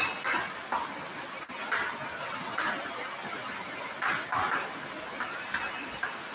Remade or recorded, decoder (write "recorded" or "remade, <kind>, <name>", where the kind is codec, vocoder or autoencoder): recorded